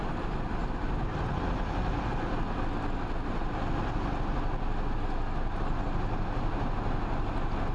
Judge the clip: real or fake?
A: real